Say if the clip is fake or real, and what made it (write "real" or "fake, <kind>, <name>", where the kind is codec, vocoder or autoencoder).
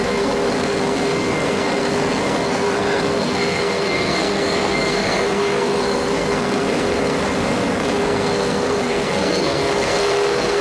fake, codec, SNAC